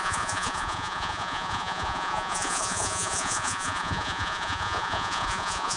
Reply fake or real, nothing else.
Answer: fake